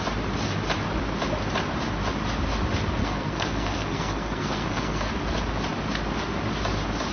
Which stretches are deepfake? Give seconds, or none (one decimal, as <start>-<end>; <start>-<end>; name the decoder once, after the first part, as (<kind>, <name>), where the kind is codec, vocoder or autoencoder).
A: 3.0-5.1 (codec, SNAC)